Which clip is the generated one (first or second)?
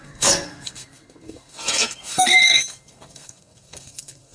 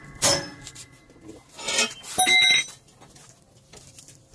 first